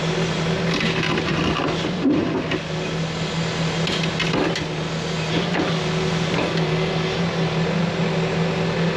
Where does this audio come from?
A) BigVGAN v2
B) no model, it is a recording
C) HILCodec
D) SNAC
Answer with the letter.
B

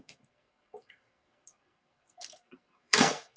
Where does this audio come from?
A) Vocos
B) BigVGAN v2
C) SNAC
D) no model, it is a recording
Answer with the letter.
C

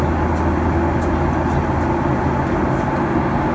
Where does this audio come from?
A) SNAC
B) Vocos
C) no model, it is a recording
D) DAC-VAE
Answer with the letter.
C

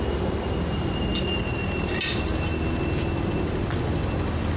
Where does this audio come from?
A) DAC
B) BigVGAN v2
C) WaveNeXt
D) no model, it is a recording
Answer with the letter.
D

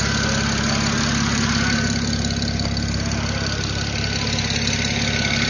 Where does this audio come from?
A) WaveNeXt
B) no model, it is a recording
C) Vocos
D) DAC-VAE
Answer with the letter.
B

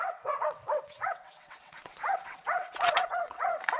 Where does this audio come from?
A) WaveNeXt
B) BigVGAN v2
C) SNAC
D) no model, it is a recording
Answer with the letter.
A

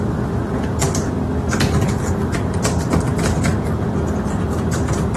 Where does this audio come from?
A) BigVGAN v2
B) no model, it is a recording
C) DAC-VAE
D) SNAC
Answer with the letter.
B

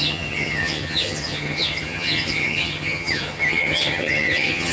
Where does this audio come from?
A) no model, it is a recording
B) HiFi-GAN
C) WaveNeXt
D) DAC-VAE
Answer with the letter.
B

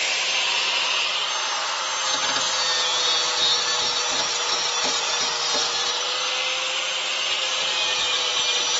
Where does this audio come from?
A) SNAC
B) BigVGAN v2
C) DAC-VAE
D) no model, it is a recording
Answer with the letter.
D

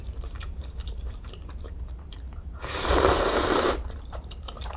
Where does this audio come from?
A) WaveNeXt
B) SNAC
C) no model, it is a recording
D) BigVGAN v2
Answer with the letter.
D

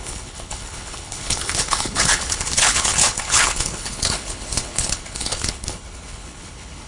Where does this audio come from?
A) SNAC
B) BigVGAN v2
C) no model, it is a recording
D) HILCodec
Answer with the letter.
D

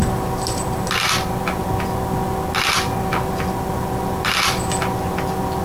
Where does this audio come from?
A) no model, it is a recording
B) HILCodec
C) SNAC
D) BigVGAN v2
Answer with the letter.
A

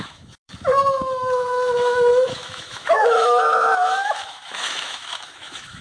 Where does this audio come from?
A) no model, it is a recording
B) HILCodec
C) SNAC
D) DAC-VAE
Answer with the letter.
D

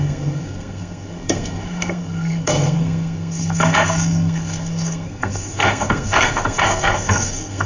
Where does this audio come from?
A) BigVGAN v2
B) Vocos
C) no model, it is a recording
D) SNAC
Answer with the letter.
D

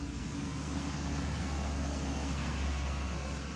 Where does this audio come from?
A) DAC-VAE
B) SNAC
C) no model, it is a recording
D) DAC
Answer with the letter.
B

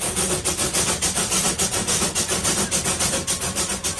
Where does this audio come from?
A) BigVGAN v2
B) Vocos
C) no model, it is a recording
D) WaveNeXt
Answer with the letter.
C